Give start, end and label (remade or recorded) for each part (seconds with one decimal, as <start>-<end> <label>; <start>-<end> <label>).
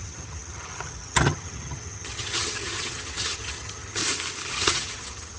0.0-4.0 remade; 4.0-4.5 recorded; 4.5-5.4 remade